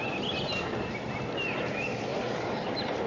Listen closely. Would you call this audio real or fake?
fake